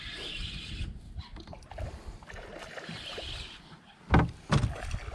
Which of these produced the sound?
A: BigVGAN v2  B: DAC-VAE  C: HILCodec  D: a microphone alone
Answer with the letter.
D